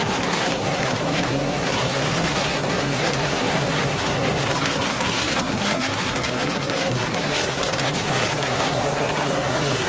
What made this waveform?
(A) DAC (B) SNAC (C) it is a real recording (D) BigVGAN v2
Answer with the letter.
B